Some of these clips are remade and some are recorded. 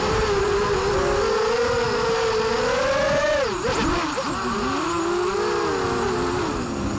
recorded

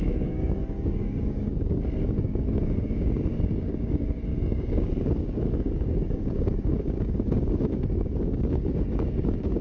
remade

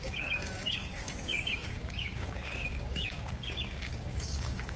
remade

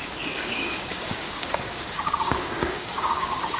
remade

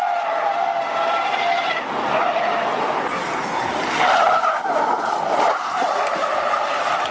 recorded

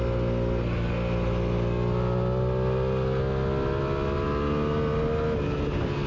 recorded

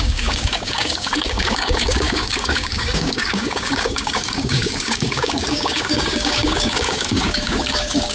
remade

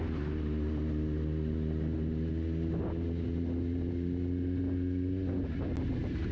recorded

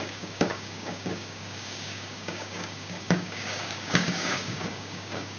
remade